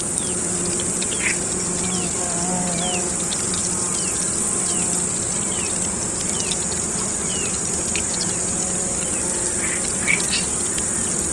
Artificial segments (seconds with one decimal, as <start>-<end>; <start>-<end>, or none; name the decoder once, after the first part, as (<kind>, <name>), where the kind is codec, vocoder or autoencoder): none